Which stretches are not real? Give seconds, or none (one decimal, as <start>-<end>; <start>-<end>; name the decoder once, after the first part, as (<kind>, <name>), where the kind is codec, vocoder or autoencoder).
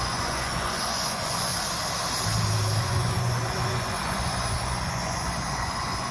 0.0-1.5 (vocoder, Vocos); 2.8-6.1